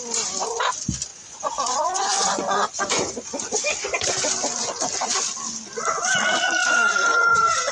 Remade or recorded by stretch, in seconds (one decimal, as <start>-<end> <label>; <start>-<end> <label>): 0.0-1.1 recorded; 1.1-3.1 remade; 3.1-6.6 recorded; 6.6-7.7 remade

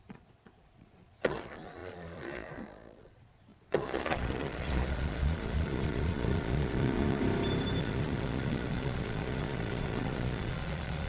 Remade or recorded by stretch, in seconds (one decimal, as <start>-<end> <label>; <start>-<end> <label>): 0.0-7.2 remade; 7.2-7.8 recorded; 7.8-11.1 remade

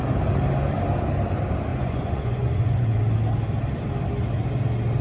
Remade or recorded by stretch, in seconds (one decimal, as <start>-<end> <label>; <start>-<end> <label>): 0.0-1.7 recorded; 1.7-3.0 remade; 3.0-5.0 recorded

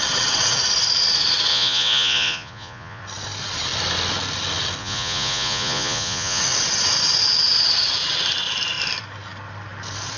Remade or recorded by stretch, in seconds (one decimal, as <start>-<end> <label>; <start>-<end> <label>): 0.0-1.5 recorded; 1.5-3.0 remade; 3.0-4.8 recorded; 4.8-6.4 remade; 6.4-10.2 recorded